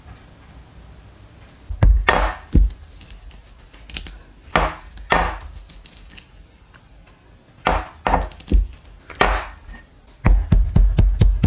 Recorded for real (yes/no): yes